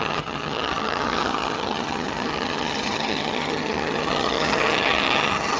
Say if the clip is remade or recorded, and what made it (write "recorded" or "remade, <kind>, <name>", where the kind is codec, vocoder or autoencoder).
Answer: remade, vocoder, HiFi-GAN